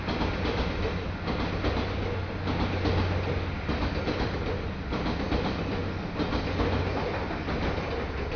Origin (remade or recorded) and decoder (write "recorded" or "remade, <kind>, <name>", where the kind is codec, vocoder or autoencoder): recorded